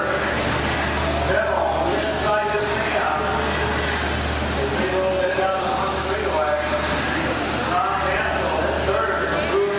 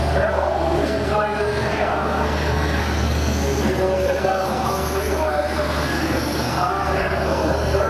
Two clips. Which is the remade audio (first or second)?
second